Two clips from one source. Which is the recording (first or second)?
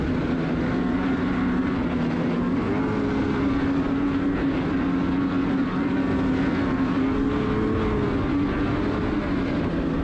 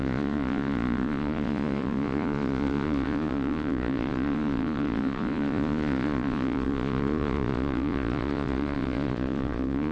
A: first